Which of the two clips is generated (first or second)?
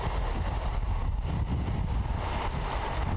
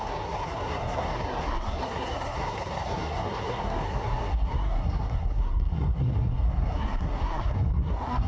second